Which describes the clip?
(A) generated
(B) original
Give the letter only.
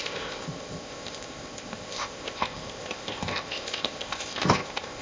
A